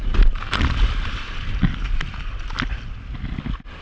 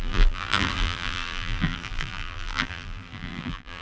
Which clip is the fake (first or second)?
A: second